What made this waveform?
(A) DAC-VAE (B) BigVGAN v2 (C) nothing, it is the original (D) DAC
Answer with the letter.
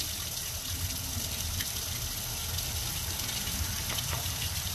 C